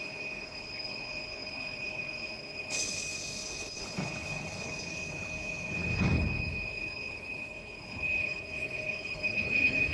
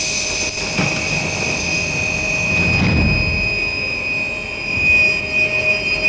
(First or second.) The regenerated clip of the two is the first